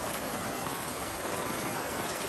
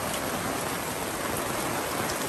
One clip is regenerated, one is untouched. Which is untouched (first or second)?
second